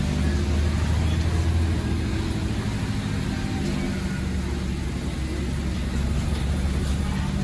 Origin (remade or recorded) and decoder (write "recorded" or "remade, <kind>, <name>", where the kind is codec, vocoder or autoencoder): recorded